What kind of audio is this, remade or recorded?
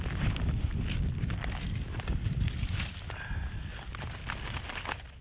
recorded